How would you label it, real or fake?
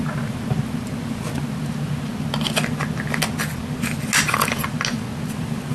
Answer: real